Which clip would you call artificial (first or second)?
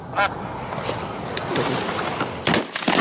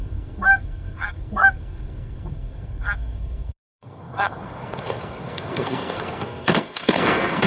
second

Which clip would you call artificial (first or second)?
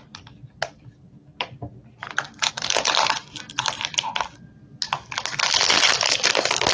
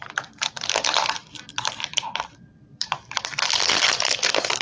second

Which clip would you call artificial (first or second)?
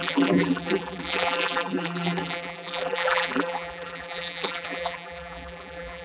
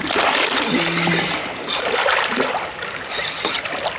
first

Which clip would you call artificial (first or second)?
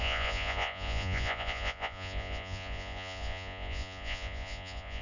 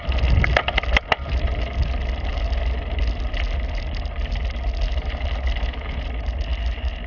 first